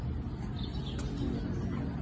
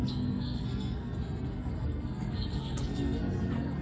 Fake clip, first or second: second